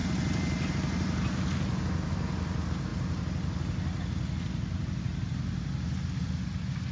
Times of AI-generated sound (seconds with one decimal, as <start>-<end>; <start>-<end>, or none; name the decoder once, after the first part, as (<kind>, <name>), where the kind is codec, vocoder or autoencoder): none